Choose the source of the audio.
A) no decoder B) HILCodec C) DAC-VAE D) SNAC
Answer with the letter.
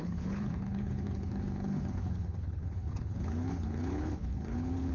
B